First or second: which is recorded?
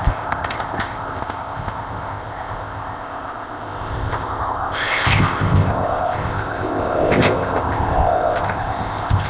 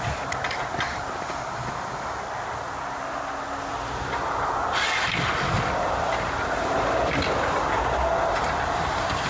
second